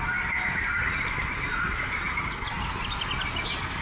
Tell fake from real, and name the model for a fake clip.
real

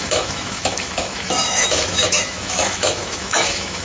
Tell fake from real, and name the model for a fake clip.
fake, autoencoder, DAC-VAE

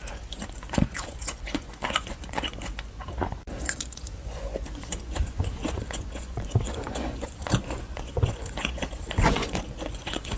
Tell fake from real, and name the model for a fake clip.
fake, vocoder, Vocos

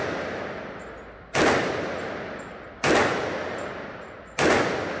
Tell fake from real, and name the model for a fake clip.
real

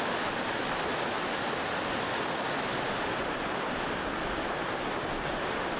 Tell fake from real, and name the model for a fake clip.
real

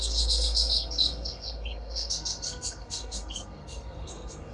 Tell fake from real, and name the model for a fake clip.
fake, codec, SNAC